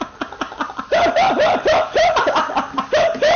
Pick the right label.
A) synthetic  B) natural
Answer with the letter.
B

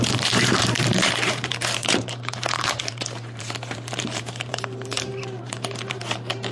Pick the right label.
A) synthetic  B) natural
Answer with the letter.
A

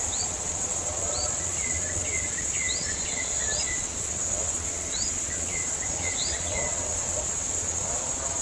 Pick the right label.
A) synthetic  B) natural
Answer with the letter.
A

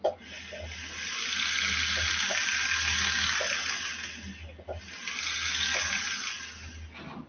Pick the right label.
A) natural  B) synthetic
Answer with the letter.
A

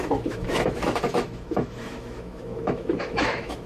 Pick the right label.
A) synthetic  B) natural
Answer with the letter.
A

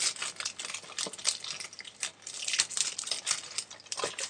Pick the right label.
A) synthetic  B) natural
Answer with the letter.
B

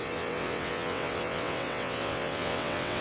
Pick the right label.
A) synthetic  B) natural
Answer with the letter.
A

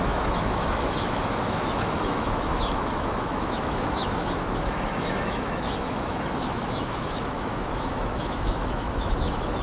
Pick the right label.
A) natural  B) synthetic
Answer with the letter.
B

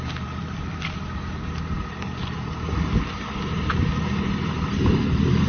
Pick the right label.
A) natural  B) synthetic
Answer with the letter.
A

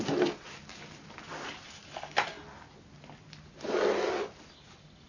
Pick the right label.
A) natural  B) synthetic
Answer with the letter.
A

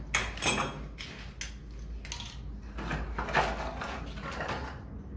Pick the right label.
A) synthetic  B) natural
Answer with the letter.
B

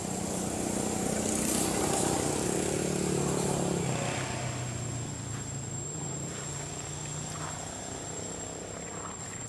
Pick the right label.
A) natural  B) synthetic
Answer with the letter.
A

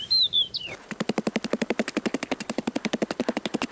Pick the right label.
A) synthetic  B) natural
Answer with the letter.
B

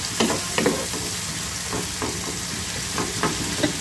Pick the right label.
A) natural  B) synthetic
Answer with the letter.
A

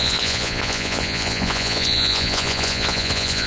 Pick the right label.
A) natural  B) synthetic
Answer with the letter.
B